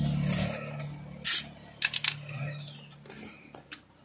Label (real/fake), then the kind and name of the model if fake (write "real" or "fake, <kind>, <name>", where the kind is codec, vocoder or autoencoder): real